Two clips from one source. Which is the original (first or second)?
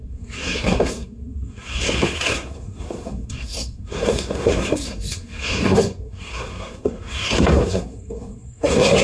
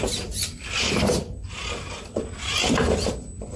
second